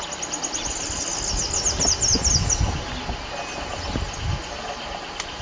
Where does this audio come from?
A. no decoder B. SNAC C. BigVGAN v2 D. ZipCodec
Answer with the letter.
A